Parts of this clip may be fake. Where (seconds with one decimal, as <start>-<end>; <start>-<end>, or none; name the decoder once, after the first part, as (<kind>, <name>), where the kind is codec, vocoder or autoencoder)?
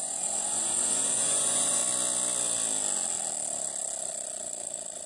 0.0-1.8 (vocoder, Vocos)